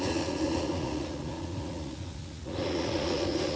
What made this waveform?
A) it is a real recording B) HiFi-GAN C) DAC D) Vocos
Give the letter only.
D